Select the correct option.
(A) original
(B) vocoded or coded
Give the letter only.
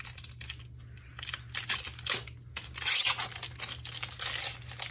A